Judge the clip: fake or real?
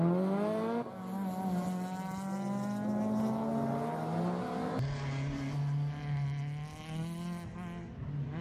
real